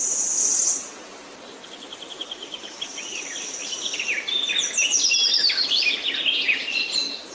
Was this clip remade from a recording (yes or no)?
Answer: no